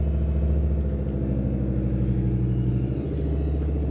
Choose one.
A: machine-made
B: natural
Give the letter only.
B